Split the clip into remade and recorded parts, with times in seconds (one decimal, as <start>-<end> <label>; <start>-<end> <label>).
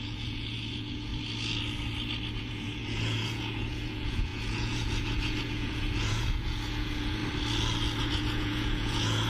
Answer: 0.0-1.1 remade; 1.1-2.4 recorded; 2.4-7.2 remade; 7.2-8.0 recorded; 8.0-9.3 remade